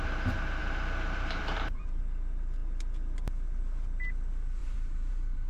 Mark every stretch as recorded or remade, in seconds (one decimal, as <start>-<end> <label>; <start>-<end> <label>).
0.0-0.6 recorded; 0.6-2.0 remade; 2.0-4.6 recorded; 4.6-5.5 remade

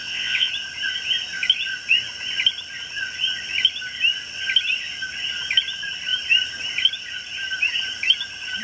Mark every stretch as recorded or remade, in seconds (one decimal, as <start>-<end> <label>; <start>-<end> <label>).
0.0-0.5 remade; 0.5-8.6 recorded

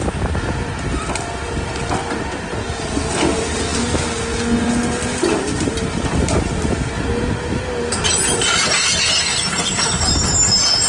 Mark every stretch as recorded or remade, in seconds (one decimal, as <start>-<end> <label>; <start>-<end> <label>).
0.0-10.9 recorded

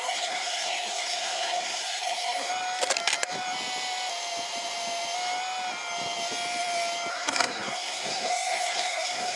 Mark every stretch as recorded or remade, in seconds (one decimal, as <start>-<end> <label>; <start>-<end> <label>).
0.0-2.5 remade; 2.5-7.1 recorded; 7.1-9.4 remade

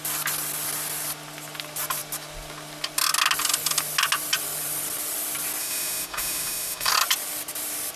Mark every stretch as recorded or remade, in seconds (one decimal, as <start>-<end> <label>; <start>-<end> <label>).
0.0-5.6 recorded; 5.6-6.9 remade; 6.9-8.0 recorded

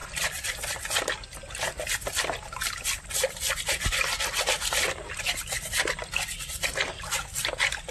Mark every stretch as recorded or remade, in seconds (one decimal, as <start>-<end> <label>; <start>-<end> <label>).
0.0-7.9 recorded